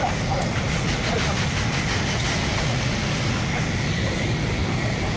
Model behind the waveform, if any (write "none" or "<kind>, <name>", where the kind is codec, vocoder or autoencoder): none